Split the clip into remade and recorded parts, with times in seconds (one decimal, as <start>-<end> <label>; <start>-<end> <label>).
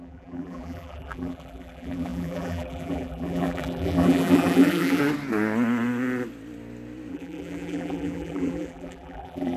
0.0-5.0 remade; 5.0-7.1 recorded; 7.1-9.6 remade